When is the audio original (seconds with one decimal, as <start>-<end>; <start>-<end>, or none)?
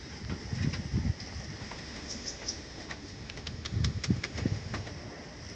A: 0.0-1.6; 4.9-5.5